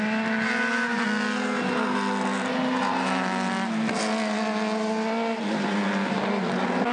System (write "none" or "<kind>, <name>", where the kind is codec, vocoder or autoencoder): none